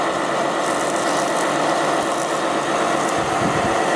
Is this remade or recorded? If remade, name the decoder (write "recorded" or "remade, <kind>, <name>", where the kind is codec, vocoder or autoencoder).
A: recorded